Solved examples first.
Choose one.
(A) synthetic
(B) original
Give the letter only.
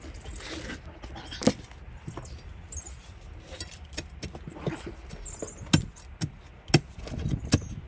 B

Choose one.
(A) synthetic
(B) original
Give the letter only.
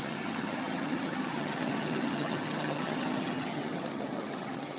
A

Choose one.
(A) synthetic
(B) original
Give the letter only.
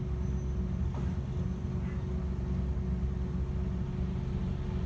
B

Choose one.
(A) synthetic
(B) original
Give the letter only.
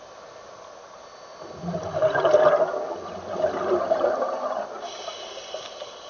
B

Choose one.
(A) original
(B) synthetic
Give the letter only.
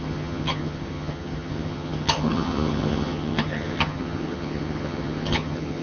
B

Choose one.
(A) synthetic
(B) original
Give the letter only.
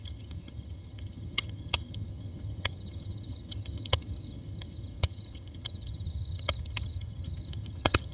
A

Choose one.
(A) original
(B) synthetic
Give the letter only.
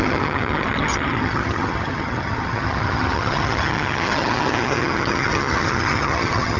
B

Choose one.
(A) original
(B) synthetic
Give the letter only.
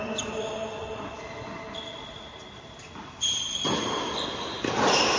A